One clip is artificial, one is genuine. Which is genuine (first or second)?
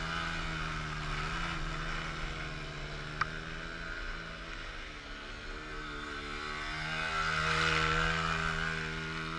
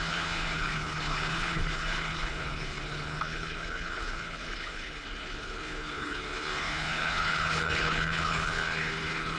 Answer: first